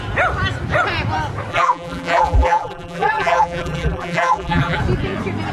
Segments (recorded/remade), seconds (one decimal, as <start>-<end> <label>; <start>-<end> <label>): 0.0-1.5 recorded; 1.5-4.8 remade; 4.8-5.5 recorded